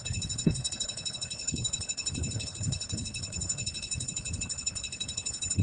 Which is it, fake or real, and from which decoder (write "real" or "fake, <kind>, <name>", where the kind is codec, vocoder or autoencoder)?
fake, codec, HILCodec